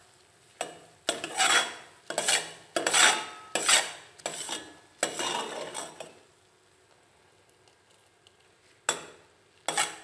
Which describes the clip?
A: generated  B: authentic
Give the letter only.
B